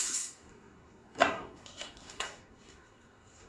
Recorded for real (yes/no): no